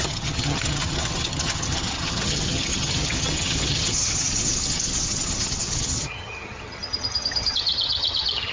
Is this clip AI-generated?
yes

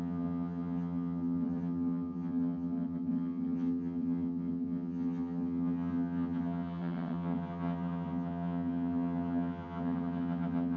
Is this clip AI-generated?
yes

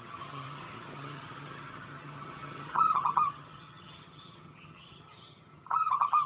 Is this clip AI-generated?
yes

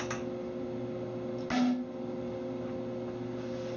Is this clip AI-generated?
no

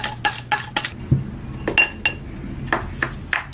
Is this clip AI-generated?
no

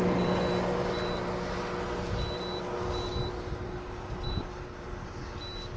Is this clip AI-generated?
no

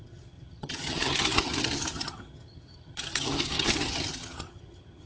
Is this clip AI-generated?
yes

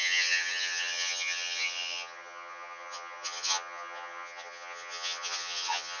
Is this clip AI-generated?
yes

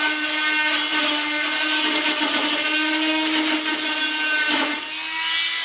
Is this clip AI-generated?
no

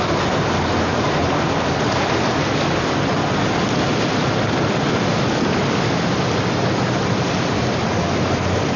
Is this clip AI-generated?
no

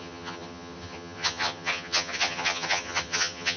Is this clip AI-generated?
yes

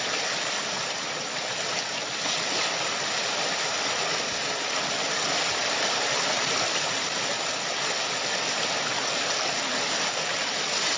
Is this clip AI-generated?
no